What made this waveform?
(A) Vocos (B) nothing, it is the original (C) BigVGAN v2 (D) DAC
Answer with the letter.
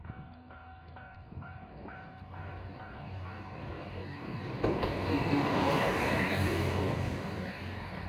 D